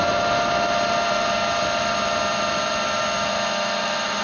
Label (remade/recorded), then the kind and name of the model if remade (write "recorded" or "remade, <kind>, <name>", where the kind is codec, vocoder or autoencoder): recorded